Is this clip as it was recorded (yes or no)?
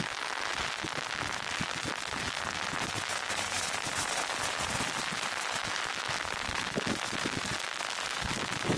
yes